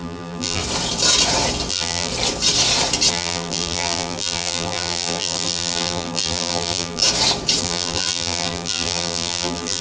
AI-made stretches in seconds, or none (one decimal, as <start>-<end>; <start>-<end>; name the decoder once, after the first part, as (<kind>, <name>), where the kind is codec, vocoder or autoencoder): 0.0-0.6 (vocoder, BigVGAN v2); 1.7-2.1; 3.1-7.0; 7.6-9.8